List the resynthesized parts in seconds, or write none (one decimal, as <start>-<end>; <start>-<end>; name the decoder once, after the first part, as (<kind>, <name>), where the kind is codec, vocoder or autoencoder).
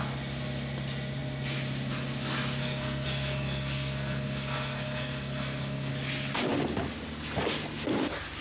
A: 2.6-5.9 (codec, SNAC)